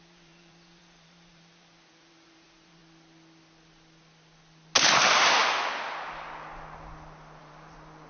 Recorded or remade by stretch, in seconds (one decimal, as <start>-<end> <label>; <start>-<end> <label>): 0.0-2.8 remade; 2.8-4.9 recorded; 4.9-5.4 remade; 5.4-7.4 recorded; 7.4-8.1 remade